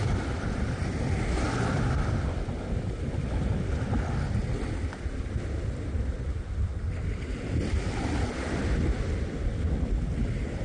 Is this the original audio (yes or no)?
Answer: yes